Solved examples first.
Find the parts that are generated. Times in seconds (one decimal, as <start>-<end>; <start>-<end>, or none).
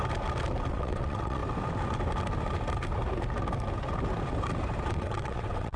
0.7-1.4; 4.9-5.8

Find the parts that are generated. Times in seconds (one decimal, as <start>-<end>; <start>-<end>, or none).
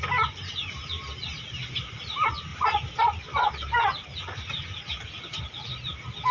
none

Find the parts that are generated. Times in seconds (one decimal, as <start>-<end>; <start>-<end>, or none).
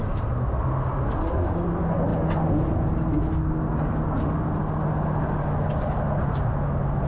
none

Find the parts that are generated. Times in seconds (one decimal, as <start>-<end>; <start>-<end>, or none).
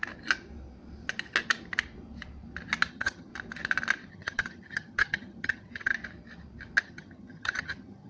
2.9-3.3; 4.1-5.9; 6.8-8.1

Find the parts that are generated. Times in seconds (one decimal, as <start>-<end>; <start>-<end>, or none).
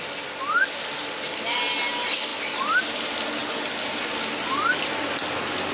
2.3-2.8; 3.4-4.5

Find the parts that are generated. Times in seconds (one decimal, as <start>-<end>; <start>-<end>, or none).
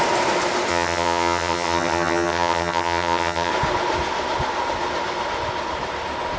0.7-3.5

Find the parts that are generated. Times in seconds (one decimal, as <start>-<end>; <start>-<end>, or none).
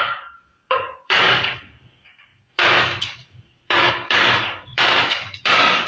0.0-5.9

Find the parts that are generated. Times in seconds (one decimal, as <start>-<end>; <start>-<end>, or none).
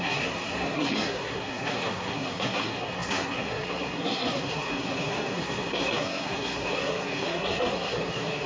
0.0-8.5